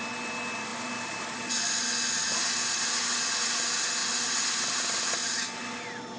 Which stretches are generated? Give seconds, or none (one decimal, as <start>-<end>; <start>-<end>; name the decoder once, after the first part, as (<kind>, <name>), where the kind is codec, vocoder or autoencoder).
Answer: 0.7-1.5 (vocoder, BigVGAN v2)